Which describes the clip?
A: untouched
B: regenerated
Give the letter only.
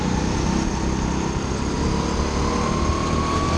A